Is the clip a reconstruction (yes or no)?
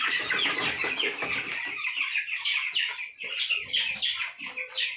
no